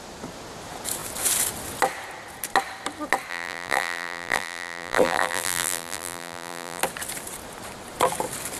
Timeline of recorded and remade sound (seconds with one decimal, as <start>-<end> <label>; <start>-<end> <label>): 0.0-3.3 recorded; 3.3-6.8 remade; 6.8-8.6 recorded